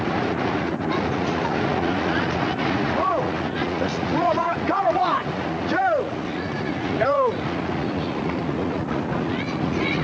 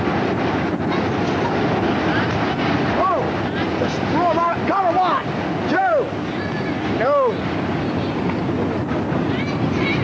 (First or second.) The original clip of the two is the second